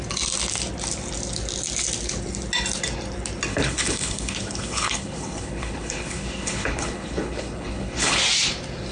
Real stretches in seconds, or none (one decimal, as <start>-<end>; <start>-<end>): 0.0-3.5; 8.2-8.9